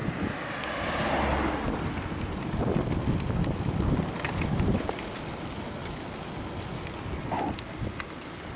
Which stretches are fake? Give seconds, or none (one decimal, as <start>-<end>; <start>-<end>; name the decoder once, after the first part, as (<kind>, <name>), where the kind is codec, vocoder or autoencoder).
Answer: none